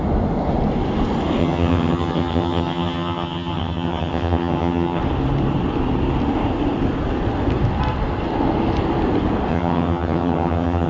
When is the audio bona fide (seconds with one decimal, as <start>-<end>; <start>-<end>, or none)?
0.0-1.4; 5.0-9.5